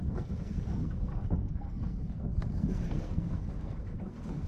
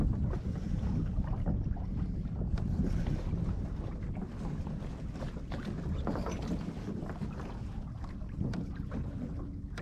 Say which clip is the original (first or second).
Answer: second